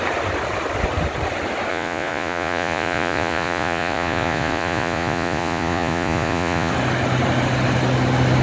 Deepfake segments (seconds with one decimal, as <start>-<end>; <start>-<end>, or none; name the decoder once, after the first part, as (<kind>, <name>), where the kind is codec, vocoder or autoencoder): 1.7-6.7 (vocoder, Vocos)